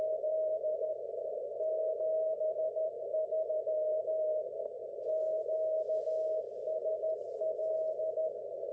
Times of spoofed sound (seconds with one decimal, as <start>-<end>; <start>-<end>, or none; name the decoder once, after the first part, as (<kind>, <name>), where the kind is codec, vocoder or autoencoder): none